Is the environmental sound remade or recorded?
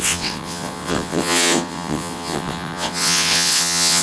remade